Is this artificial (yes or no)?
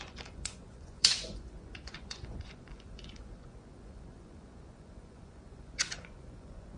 yes